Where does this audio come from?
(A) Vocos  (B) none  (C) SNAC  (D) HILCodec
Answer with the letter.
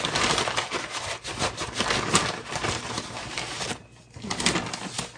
B